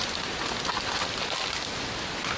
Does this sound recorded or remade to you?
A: recorded